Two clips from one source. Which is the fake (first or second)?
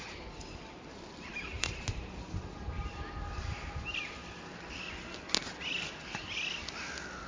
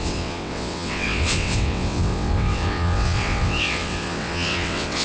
second